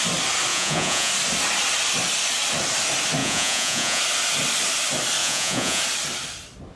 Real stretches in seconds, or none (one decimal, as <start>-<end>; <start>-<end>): 0.0-0.5; 1.1-3.2; 4.0-5.2; 5.8-6.8